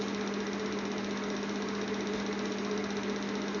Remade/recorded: recorded